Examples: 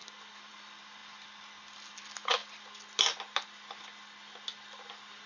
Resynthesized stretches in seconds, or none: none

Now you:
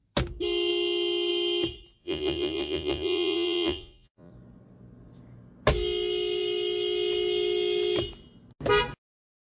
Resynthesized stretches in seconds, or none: 2.0-4.3 (vocoder, Vocos)

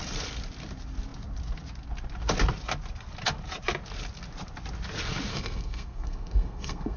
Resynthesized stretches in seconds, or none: 5.3-7.0 (codec, SNAC)

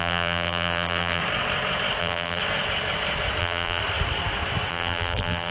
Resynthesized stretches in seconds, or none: 0.0-1.2 (vocoder, BigVGAN v2); 2.0-2.4; 3.4-3.8; 4.7-5.5

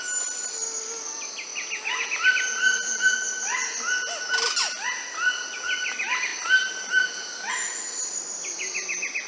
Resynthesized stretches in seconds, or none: none

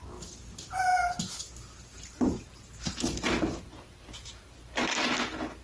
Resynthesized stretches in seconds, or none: 1.9-4.3 (vocoder, BigVGAN v2)

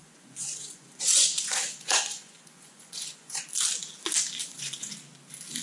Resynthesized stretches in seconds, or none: 0.0-3.4 (vocoder, Vocos); 4.4-4.9